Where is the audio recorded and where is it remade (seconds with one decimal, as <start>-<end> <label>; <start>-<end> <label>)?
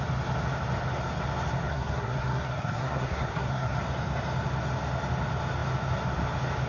0.0-1.7 recorded; 1.7-3.8 remade; 3.8-6.7 recorded